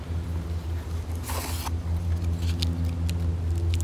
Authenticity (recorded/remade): recorded